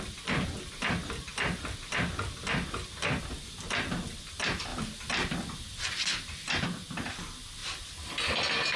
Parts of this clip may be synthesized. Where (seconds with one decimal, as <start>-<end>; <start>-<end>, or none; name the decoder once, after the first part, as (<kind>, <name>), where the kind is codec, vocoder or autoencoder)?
none